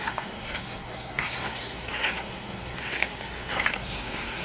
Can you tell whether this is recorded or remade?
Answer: remade